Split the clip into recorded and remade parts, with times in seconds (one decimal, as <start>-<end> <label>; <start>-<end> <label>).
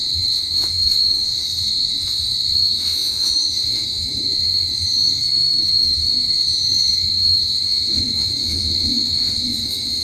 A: 0.0-10.0 remade